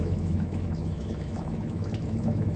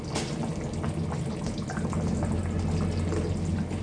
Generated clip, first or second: first